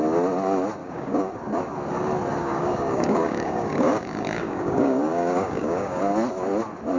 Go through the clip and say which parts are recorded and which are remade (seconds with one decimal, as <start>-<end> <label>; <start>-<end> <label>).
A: 0.0-0.8 recorded; 0.8-1.3 remade; 1.3-2.4 recorded; 2.4-6.0 remade; 6.0-7.0 recorded